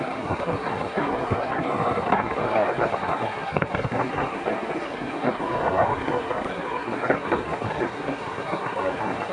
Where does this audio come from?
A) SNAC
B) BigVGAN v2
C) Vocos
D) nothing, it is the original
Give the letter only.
A